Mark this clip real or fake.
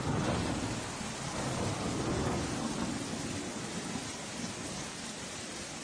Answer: real